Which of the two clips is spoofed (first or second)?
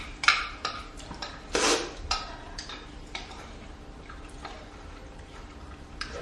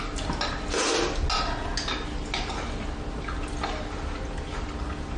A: first